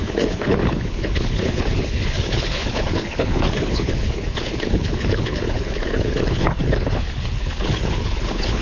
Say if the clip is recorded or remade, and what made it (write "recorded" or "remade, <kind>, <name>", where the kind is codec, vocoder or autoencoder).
remade, codec, HILCodec